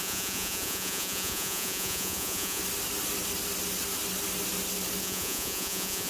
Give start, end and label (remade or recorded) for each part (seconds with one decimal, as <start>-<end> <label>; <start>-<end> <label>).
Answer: 0.0-2.6 remade; 2.6-5.0 recorded; 5.0-6.1 remade